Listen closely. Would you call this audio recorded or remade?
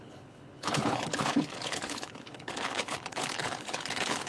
remade